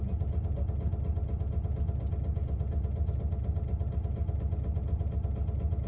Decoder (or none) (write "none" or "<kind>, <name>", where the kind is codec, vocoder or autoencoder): none